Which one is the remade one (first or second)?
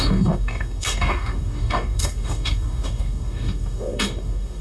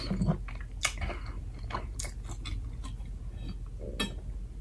first